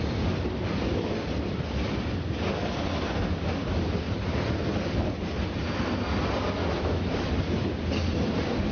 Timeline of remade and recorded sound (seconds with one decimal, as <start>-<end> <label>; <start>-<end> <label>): 0.0-6.6 recorded; 6.6-7.3 remade; 7.3-8.7 recorded